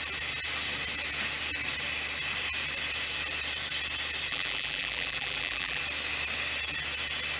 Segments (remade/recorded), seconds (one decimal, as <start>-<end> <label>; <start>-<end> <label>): 0.0-4.3 recorded; 4.3-5.8 remade; 5.8-7.4 recorded